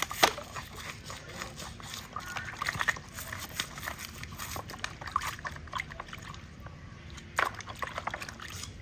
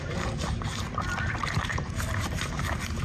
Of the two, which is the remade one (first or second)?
second